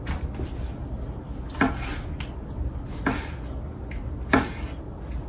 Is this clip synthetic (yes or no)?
no